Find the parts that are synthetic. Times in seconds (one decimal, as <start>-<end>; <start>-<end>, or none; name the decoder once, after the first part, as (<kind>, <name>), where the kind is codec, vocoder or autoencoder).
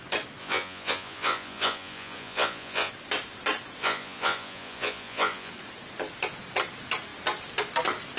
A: 0.4-2.9 (vocoder, Vocos); 3.8-5.5